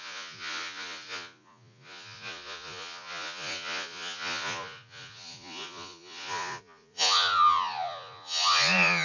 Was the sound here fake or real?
fake